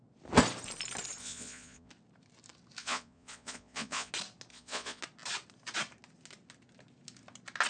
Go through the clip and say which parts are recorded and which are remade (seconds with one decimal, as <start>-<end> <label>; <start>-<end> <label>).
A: 0.0-1.2 recorded; 1.2-1.9 remade; 1.9-2.8 recorded; 2.8-4.1 remade; 4.1-4.5 recorded; 4.5-5.0 remade; 5.0-7.7 recorded